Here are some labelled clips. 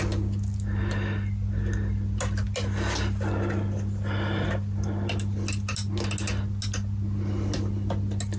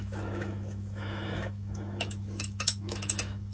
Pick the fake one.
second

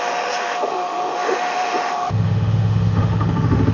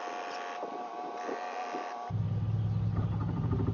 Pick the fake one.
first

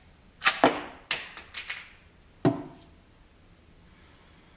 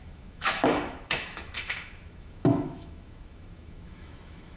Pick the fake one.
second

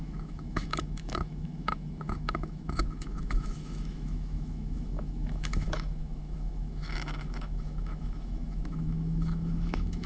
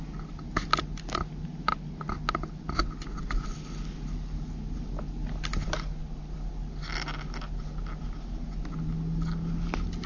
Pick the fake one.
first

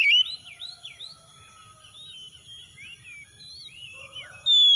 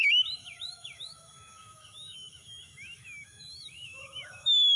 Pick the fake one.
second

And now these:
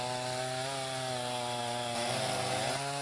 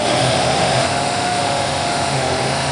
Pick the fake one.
second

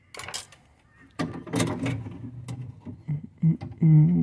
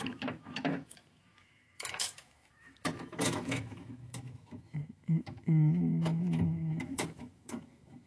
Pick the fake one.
second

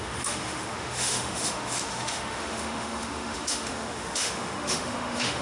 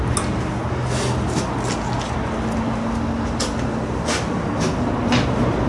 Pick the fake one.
first